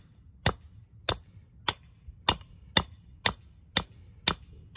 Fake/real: real